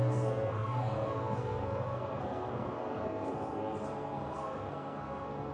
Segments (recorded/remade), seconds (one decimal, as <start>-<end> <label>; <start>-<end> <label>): 0.0-5.5 remade